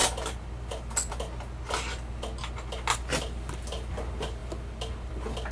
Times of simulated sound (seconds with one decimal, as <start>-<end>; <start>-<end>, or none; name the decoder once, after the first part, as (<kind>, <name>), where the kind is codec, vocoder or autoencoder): none